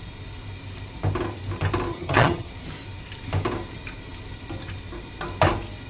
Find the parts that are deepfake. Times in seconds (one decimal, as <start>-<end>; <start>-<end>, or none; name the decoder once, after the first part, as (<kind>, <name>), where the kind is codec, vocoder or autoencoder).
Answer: 1.9-2.5 (vocoder, HiFi-GAN)